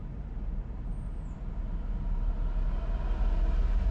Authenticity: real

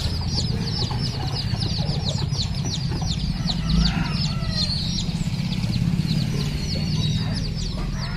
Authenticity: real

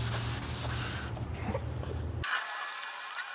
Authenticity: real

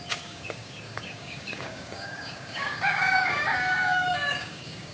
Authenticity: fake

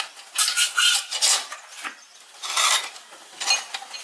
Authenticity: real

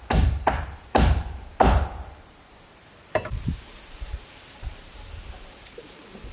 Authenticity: fake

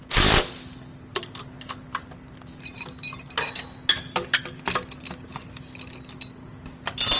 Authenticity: real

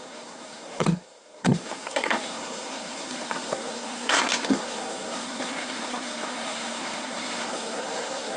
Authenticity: fake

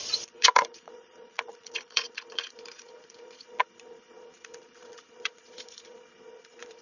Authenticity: fake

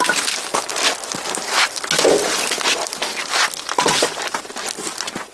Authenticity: real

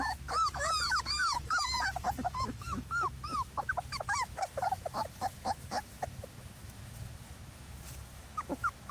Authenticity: fake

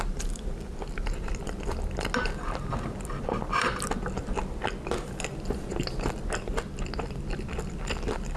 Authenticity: real